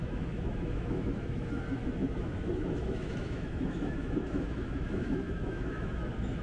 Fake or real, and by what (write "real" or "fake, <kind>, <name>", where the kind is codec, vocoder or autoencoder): fake, autoencoder, DAC-VAE